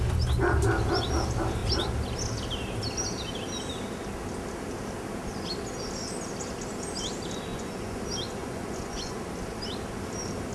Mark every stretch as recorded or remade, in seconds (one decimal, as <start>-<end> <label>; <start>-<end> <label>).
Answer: 0.0-7.5 recorded; 7.5-8.0 remade; 8.0-8.4 recorded; 8.4-9.2 remade; 9.2-10.5 recorded